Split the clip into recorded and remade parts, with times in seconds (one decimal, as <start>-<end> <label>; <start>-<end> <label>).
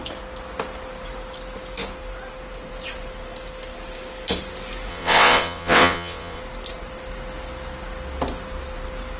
0.0-4.9 recorded; 4.9-6.4 remade; 6.4-9.2 recorded